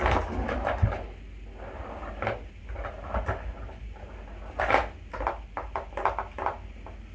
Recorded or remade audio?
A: recorded